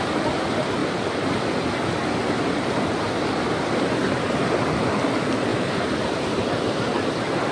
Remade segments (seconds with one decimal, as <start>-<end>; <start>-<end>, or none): 0.8-1.4; 2.0-2.6; 4.0-5.0; 5.5-6.4